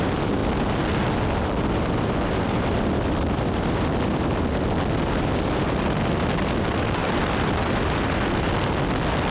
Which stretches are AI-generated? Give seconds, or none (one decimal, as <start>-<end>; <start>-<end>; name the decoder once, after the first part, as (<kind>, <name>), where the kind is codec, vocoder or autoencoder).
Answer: 7.0-7.8 (vocoder, BigVGAN v2)